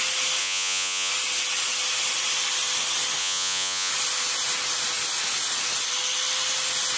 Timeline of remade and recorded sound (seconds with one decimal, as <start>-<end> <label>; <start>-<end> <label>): 0.0-0.4 recorded; 0.4-1.1 remade; 1.1-3.2 recorded; 3.2-3.9 remade; 3.9-7.0 recorded